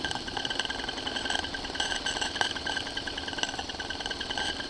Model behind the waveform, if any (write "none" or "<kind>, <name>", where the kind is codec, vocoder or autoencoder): none